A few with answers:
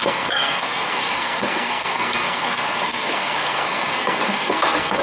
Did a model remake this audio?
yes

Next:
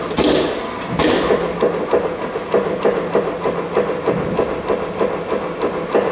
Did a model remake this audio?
no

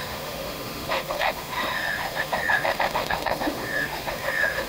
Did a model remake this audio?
yes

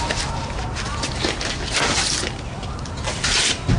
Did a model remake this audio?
no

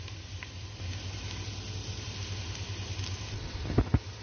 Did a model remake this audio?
no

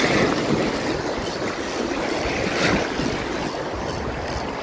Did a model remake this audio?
no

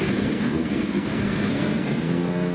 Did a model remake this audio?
yes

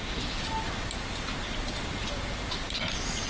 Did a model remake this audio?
no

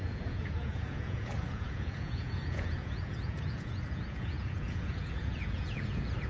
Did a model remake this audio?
yes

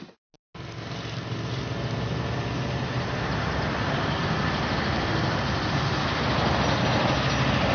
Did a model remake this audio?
no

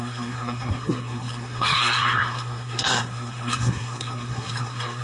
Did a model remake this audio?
yes